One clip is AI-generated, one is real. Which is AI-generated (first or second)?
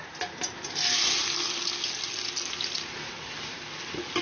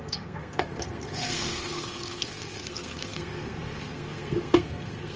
second